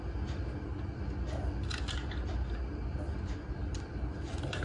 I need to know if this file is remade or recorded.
recorded